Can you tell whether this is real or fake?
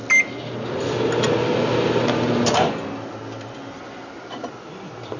real